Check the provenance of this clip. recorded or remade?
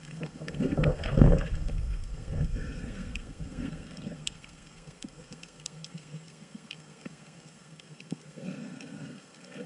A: remade